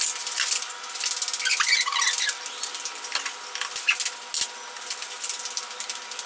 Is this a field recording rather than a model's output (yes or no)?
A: yes